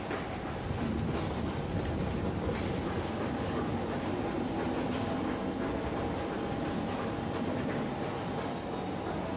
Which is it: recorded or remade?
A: recorded